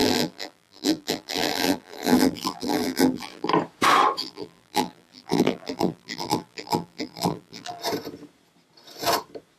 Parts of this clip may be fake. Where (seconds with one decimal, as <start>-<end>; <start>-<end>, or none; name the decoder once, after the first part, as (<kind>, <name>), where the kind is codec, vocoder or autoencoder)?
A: 0.0-3.5 (vocoder, BigVGAN v2); 4.2-7.8